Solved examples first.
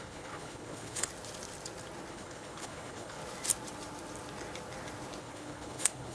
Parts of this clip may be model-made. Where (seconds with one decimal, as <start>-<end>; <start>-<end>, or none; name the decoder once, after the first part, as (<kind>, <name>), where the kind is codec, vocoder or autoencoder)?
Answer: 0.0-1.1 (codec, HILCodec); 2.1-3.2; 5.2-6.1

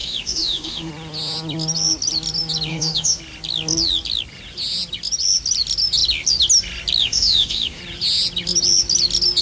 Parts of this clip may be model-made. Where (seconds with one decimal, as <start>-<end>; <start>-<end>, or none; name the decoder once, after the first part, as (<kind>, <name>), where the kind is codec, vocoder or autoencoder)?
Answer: 0.0-0.9 (autoencoder, DAC-VAE); 2.7-3.2; 7.0-7.8

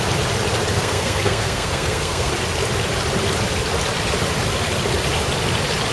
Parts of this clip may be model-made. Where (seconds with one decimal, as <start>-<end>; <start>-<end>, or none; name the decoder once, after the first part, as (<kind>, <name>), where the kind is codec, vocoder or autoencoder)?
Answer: 0.7-2.3 (codec, SNAC)

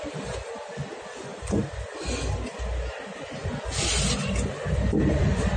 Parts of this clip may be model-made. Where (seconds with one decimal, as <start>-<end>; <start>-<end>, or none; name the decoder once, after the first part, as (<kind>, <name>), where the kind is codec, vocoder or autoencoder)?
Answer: 0.0-1.3 (vocoder, BigVGAN v2); 4.7-5.6